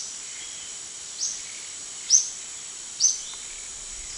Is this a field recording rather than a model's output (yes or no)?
yes